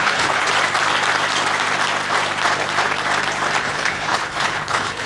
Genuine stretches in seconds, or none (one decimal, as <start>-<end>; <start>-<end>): 0.5-3.6